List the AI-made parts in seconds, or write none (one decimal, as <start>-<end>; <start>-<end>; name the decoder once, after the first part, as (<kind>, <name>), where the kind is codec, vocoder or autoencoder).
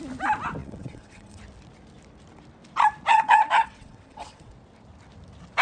0.6-1.4 (vocoder, WaveNeXt); 3.1-4.5